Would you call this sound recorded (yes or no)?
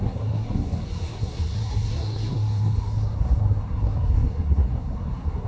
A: no